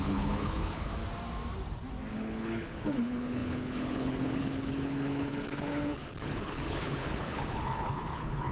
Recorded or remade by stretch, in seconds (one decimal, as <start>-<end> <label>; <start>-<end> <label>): 0.0-0.9 remade; 0.9-2.1 recorded; 2.1-8.5 remade